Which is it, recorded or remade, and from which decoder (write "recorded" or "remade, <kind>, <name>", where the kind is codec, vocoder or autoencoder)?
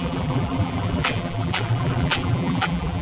remade, vocoder, BigVGAN v2